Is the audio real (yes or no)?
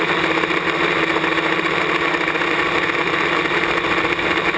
yes